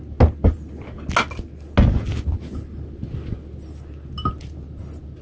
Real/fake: real